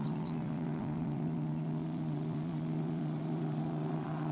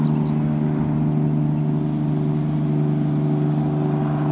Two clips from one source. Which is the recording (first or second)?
second